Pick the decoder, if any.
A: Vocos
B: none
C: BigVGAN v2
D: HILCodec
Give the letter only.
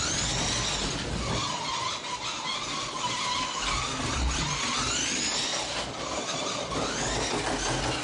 B